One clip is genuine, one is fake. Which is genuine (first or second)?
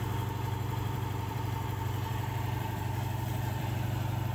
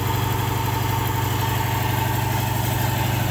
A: second